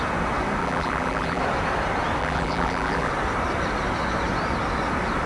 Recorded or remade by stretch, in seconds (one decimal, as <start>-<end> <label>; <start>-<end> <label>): 0.0-0.6 recorded; 0.6-1.4 remade; 1.4-2.2 recorded; 2.2-3.1 remade; 3.1-5.3 recorded